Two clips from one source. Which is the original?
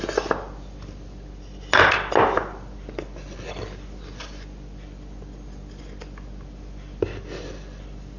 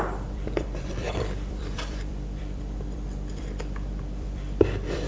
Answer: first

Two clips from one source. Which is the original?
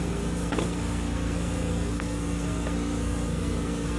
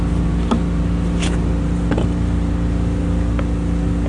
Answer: second